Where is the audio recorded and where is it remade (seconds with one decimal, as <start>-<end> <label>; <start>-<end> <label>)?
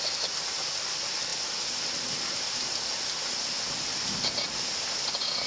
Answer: 0.0-5.5 recorded